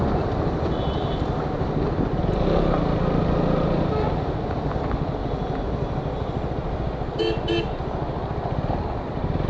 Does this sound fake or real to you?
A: real